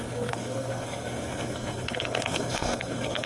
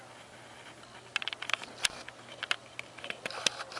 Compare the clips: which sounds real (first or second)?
second